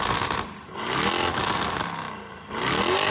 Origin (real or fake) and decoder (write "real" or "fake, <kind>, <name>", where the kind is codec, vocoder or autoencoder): real